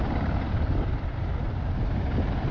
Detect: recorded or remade recorded